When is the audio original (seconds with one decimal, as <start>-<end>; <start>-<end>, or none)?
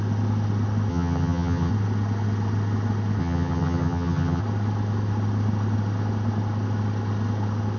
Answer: 0.0-0.9; 1.7-3.2; 4.4-7.8